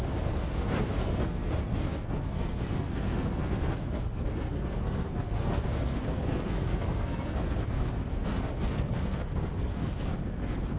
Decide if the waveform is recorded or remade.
remade